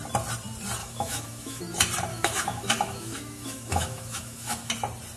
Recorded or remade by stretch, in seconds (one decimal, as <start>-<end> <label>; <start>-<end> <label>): 0.0-0.8 recorded; 0.8-1.6 remade; 1.6-2.1 recorded; 2.1-4.7 remade; 4.7-5.2 recorded